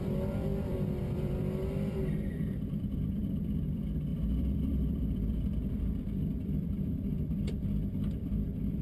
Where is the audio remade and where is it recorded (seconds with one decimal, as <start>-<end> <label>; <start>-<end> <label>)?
0.0-8.8 remade